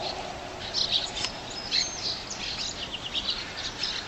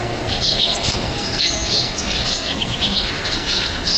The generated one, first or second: second